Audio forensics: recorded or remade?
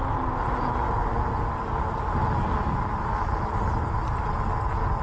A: recorded